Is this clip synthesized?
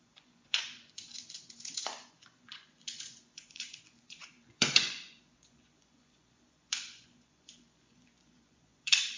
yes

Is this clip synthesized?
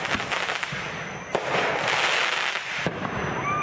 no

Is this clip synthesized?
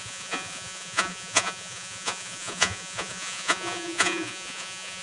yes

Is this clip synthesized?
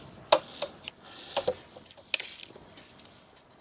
no